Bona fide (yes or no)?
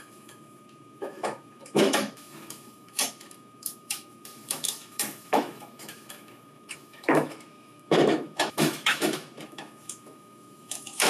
no